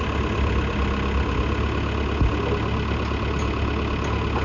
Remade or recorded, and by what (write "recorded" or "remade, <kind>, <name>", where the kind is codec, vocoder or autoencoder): recorded